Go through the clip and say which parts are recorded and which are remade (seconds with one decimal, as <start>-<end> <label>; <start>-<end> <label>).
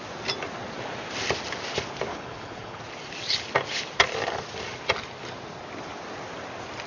0.0-2.1 recorded; 2.1-2.8 remade; 2.8-6.9 recorded